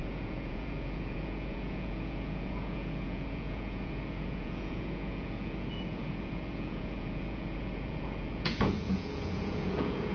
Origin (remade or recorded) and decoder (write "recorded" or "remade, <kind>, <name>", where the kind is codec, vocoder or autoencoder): remade, vocoder, Vocos